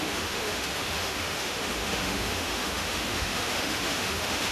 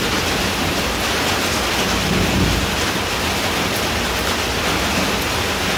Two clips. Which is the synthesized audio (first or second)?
first